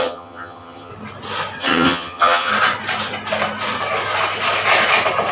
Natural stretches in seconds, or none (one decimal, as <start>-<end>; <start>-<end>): 0.9-1.6; 2.5-5.3

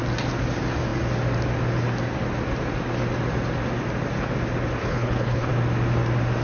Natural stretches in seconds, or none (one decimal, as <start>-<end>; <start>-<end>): 0.0-4.8; 5.5-6.4